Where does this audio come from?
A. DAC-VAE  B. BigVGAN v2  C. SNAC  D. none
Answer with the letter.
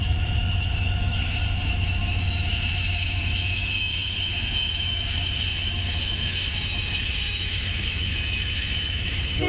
A